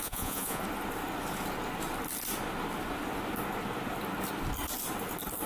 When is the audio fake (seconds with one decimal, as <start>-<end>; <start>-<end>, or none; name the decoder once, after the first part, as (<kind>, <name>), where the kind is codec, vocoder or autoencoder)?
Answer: 0.0-0.6 (vocoder, Vocos)